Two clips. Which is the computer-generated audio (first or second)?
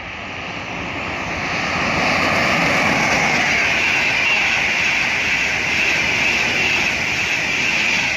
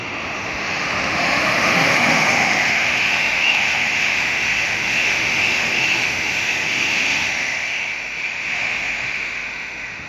second